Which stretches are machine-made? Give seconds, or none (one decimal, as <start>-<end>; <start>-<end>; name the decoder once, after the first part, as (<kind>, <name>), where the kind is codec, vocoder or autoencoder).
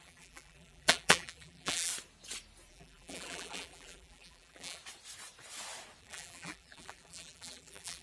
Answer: 0.0-1.9 (vocoder, BigVGAN v2); 2.7-4.8; 6.0-8.0